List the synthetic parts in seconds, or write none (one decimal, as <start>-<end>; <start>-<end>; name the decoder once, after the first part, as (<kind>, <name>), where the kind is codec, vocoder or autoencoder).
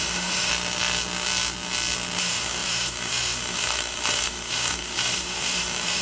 0.0-0.5 (autoencoder, DAC-VAE); 2.2-6.0